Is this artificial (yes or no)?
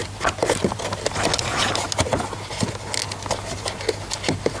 no